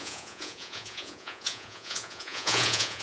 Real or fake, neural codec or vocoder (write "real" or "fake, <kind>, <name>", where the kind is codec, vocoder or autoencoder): fake, vocoder, Vocos